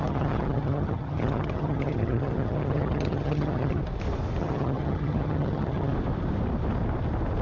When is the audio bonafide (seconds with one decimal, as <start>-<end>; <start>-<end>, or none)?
3.8-4.4; 5.9-7.4